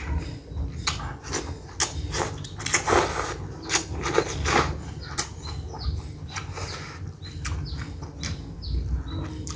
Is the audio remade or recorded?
recorded